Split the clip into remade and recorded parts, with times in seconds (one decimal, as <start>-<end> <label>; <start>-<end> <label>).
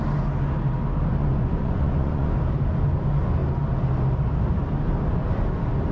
0.0-1.2 recorded; 1.2-2.3 remade; 2.3-5.9 recorded